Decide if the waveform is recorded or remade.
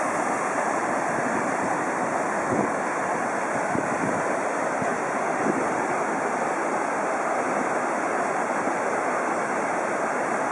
recorded